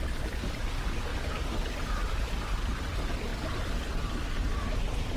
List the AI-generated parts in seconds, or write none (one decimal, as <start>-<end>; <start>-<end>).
1.1-1.9